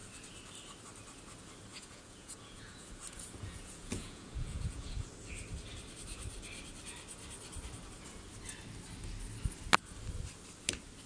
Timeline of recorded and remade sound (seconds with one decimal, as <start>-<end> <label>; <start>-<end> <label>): 0.0-1.7 recorded; 1.7-5.1 remade; 5.1-11.1 recorded